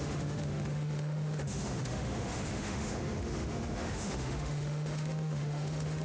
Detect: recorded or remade remade